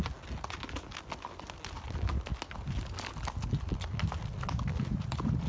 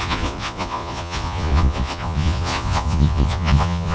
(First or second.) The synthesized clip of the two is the second